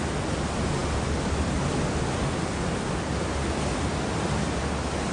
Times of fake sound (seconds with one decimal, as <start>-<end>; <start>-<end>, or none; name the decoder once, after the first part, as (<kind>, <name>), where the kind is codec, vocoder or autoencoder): none